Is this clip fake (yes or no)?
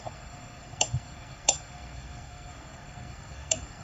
yes